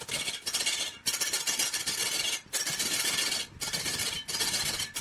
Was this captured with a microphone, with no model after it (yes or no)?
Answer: yes